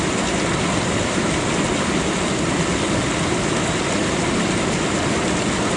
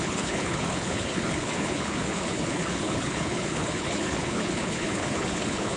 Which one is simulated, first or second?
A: second